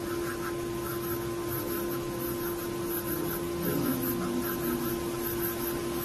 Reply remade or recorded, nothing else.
recorded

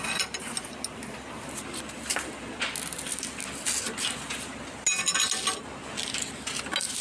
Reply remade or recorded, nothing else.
recorded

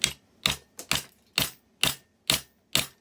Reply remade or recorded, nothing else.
recorded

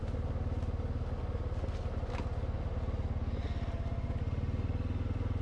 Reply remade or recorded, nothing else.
recorded